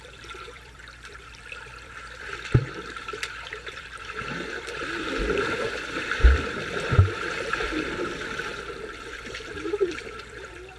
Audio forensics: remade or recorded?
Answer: remade